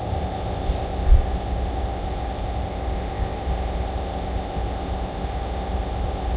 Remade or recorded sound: remade